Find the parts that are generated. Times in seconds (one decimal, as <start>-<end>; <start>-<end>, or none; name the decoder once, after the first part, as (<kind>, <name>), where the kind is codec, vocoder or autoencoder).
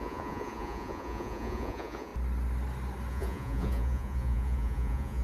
0.0-2.1 (vocoder, Vocos); 3.1-5.2